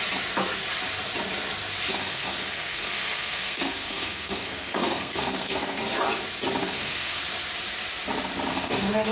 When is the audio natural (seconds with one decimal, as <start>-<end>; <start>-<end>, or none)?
0.0-1.9; 5.8-6.6; 7.2-8.5